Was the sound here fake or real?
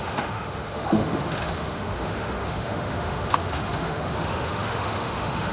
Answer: fake